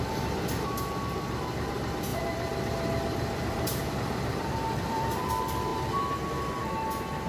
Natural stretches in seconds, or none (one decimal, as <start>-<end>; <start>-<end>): 0.0-2.1; 5.3-7.3